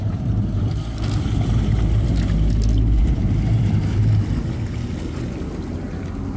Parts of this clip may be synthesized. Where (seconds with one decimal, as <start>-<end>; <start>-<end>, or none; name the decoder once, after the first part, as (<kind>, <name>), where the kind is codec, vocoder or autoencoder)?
0.0-0.7 (vocoder, BigVGAN v2); 3.0-4.0